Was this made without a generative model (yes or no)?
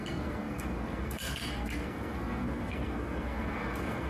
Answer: no